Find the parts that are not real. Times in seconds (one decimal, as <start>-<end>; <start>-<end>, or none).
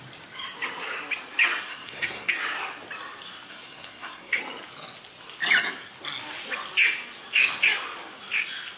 1.7-2.3; 3.5-4.4